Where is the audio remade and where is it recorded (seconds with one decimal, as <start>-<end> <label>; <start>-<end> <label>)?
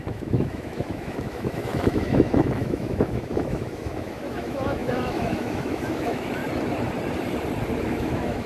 0.0-6.4 remade; 6.4-7.8 recorded; 7.8-8.5 remade